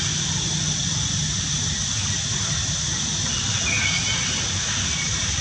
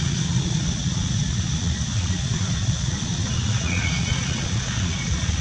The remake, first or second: second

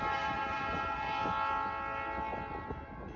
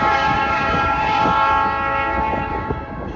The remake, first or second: second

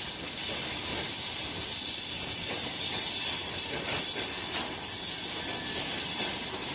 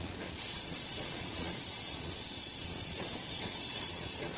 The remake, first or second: second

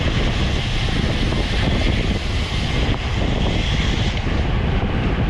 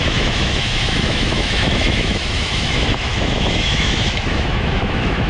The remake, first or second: second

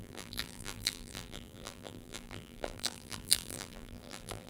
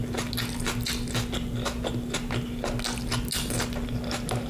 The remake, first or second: first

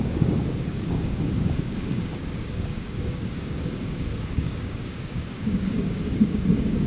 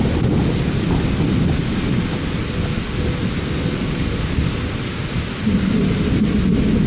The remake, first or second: first